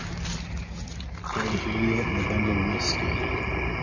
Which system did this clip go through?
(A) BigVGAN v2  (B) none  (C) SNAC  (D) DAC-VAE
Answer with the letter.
B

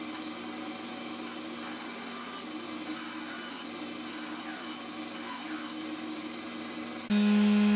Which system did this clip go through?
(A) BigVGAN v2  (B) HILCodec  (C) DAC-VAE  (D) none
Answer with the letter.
D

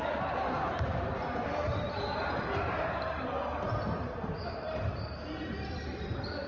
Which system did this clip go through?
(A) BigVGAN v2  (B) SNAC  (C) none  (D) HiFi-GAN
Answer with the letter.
A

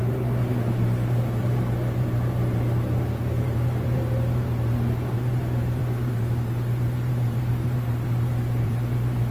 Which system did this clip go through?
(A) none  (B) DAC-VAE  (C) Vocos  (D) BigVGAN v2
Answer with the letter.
D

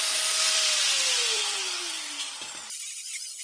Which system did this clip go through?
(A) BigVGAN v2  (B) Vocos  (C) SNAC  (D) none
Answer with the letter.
A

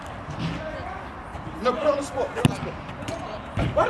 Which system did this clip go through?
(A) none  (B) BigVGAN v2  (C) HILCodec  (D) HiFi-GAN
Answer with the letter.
A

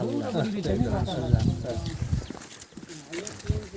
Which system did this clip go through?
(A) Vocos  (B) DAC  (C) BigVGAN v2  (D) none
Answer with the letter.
D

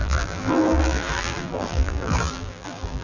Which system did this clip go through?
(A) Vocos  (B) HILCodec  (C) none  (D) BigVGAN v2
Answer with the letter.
D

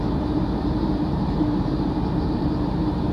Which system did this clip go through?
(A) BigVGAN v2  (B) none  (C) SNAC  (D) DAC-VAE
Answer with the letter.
A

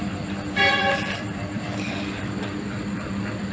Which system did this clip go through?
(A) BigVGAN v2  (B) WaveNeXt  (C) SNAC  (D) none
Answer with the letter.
A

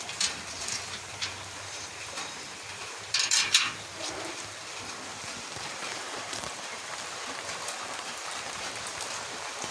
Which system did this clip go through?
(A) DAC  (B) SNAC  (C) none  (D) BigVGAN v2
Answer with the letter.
D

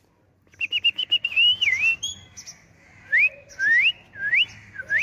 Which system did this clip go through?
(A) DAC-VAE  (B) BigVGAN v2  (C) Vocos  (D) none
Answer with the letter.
D